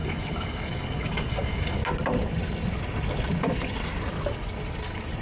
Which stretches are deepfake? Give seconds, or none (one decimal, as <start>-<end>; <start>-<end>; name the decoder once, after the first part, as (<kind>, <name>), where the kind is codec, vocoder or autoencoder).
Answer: 0.0-1.8 (codec, DAC)